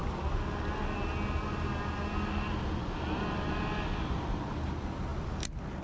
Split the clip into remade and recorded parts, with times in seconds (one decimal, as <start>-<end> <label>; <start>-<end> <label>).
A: 0.0-5.8 recorded